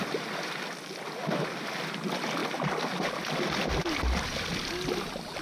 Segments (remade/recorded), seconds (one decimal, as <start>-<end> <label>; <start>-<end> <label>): 0.0-5.4 recorded